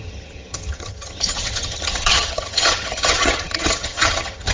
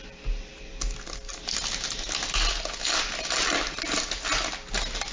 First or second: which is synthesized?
first